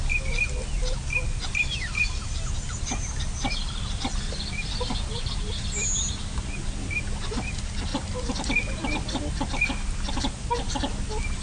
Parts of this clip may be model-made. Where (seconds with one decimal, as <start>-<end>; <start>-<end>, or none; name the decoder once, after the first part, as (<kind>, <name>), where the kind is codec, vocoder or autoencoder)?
none